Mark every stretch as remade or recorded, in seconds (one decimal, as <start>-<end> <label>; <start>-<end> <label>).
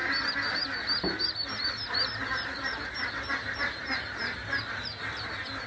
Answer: 0.0-5.7 recorded